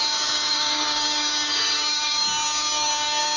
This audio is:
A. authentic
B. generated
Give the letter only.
B